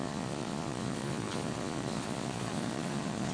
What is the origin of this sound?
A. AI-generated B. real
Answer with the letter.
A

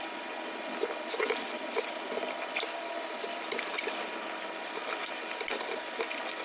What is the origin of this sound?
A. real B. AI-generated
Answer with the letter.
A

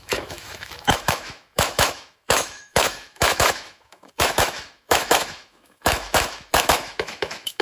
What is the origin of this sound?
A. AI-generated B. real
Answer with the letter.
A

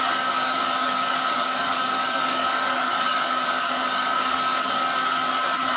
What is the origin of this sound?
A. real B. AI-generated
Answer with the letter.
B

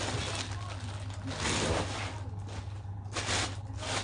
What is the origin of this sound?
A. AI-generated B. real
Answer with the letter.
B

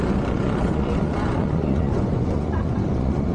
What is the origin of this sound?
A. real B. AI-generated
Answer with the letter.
B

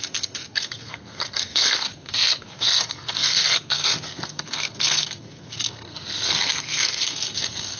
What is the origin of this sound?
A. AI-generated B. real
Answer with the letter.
A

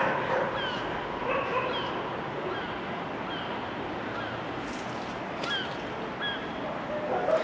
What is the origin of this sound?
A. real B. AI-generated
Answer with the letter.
A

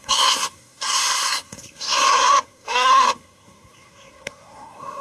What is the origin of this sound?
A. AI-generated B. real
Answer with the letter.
A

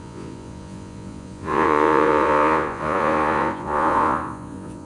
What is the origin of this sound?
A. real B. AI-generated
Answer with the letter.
B